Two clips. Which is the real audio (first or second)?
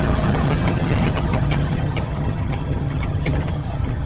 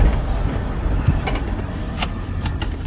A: second